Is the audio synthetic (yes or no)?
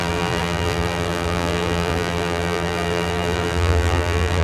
yes